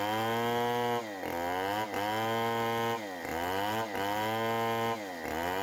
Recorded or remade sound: recorded